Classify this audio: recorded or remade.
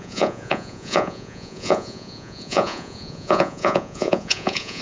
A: remade